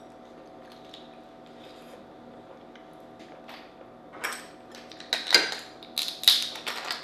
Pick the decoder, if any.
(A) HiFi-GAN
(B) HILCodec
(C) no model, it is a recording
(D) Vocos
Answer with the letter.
C